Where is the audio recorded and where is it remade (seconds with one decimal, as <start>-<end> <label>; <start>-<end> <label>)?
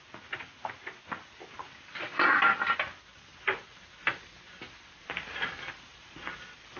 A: 0.0-6.8 recorded